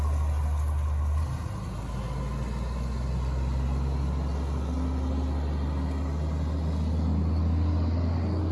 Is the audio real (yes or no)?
yes